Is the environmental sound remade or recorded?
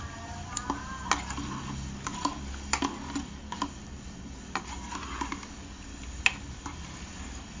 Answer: recorded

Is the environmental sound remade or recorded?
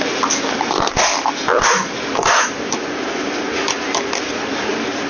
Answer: recorded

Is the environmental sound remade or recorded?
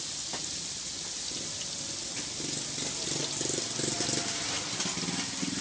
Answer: recorded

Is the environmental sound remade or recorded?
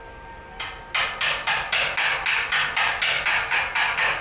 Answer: recorded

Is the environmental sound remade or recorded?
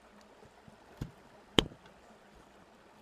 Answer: recorded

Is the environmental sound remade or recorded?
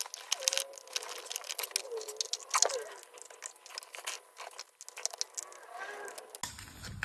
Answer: recorded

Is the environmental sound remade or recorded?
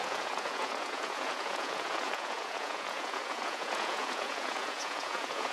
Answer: remade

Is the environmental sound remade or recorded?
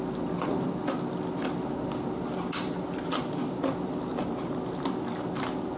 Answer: recorded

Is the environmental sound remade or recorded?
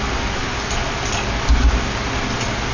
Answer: recorded